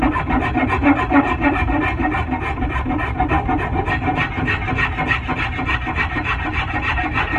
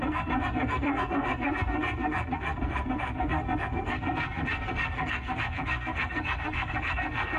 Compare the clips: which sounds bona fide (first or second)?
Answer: first